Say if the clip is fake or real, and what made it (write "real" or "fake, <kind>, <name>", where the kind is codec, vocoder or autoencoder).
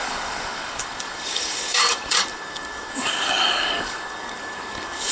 fake, codec, DAC